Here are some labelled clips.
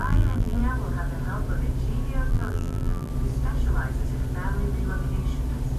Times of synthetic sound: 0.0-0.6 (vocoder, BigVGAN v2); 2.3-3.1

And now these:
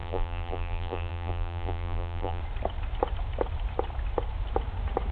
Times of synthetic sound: 0.0-2.4 (vocoder, BigVGAN v2)

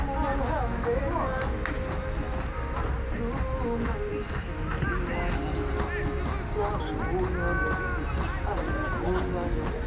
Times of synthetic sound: 0.4-1.0 (autoencoder, DAC-VAE)

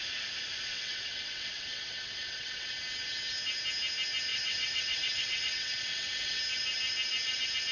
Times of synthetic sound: 0.7-2.7 (vocoder, WaveNeXt); 4.3-6.4